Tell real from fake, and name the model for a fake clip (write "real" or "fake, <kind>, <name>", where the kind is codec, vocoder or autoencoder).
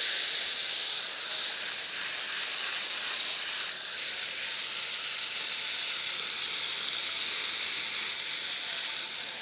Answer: real